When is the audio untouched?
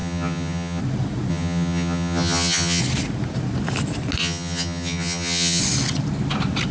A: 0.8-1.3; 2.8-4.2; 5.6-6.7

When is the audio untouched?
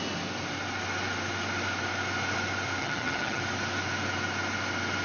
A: 0.0-2.8; 3.4-5.0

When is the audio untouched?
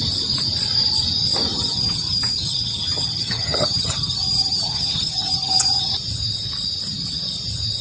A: 0.0-1.5; 5.9-7.8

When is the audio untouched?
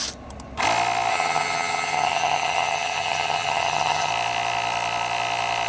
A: 0.0-1.1; 4.1-5.7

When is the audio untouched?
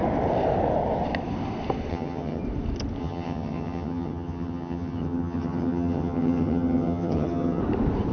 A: 0.0-1.9; 2.4-3.0; 7.6-8.1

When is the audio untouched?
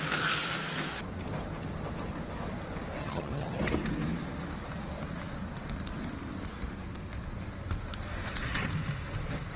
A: 0.0-3.0; 3.6-9.6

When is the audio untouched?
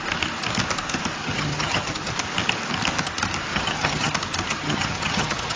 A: 0.0-1.2; 2.1-3.5; 4.1-4.5